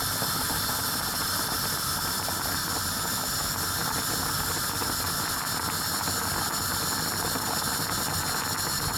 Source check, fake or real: real